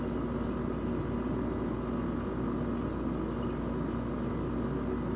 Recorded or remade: recorded